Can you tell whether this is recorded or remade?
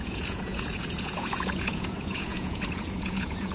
remade